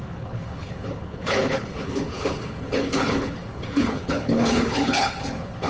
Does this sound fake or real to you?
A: fake